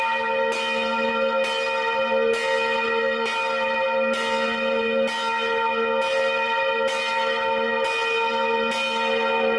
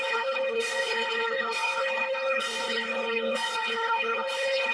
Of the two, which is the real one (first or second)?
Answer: first